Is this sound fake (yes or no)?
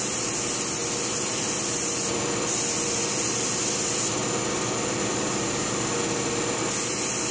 no